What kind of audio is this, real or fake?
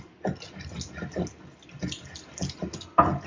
real